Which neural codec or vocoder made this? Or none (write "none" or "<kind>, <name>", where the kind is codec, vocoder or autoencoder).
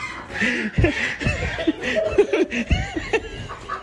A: none